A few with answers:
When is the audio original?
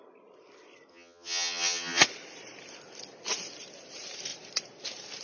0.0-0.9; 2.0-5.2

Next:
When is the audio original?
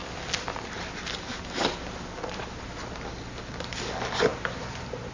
0.0-5.1